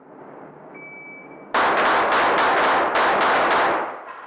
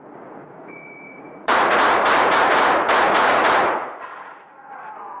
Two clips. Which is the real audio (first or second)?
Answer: first